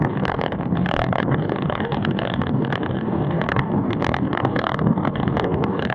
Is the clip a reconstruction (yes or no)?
yes